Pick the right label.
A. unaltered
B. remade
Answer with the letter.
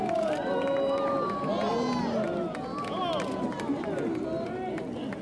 A